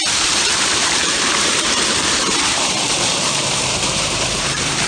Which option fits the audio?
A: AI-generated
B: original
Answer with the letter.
A